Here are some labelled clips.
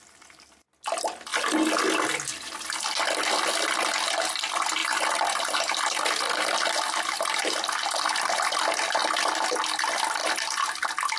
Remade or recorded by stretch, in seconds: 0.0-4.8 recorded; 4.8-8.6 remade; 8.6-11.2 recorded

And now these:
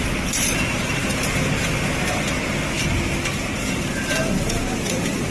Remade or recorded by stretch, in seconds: 0.0-5.3 recorded

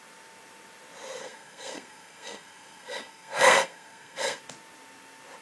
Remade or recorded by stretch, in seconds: 0.0-1.2 recorded; 1.2-4.4 remade; 4.4-5.4 recorded